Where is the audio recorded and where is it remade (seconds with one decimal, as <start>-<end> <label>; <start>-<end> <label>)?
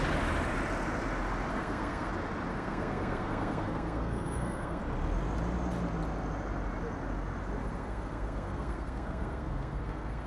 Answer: 0.0-1.5 recorded; 1.5-2.1 remade; 2.1-2.5 recorded; 2.5-4.8 remade; 4.8-7.6 recorded; 7.6-10.3 remade